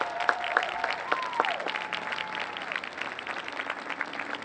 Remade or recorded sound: recorded